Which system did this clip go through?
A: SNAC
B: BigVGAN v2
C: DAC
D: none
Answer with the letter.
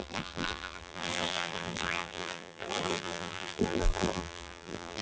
B